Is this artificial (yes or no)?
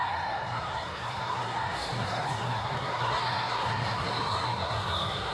yes